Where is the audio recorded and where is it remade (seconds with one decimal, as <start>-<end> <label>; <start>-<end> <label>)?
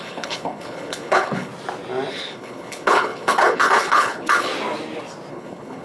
0.0-1.5 remade; 1.5-2.1 recorded; 2.1-4.5 remade; 4.5-5.3 recorded; 5.3-5.8 remade